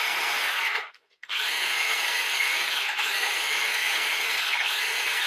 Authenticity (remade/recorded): remade